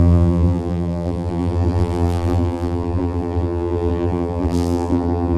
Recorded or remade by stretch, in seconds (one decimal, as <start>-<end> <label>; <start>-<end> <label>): 0.0-5.4 remade